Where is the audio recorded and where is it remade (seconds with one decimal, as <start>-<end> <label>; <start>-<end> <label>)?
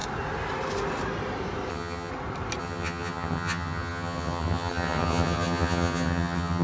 0.0-1.7 recorded; 1.7-2.1 remade; 2.1-2.6 recorded; 2.6-6.6 remade